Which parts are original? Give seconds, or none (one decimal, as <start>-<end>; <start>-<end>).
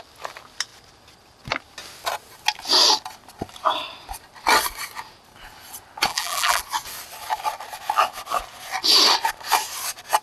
0.0-6.1; 6.6-10.2